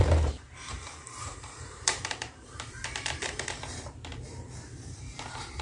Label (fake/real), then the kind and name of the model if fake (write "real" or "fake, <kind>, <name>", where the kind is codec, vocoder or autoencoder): fake, vocoder, BigVGAN v2